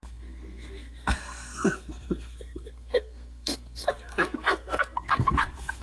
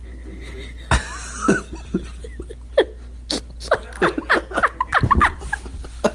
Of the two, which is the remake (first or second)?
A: first